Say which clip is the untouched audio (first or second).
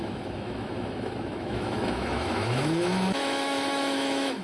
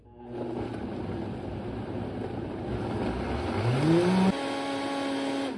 second